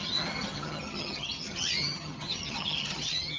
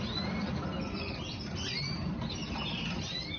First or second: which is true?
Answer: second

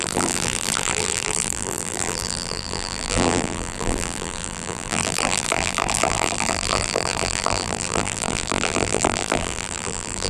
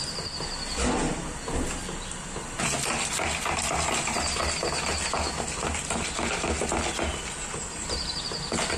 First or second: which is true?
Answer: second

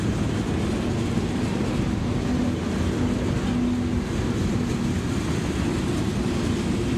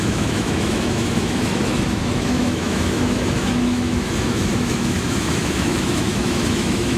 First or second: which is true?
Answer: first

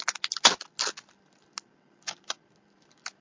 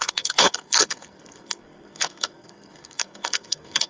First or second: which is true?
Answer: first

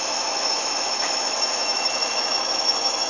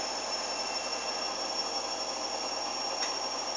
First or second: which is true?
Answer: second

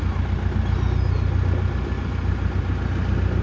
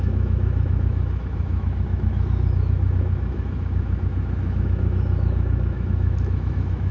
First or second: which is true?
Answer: first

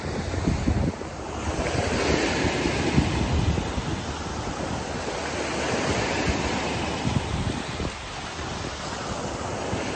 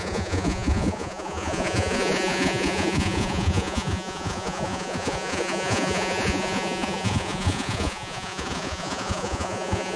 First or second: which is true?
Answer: first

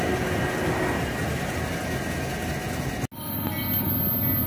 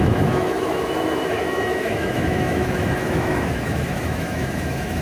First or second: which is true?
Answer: first